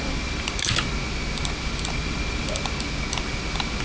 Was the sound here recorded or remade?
recorded